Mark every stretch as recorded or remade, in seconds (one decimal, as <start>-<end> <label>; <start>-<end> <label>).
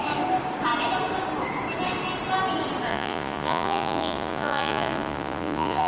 0.0-2.9 recorded; 2.9-5.9 remade